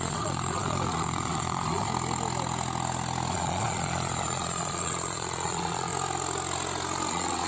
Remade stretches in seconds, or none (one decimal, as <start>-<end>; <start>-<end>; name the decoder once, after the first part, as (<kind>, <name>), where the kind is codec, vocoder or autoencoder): 0.0-1.9 (vocoder, Vocos); 3.3-5.9; 7.1-7.5